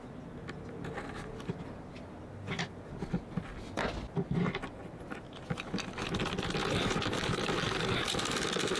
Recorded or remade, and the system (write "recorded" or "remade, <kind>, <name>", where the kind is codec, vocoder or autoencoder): recorded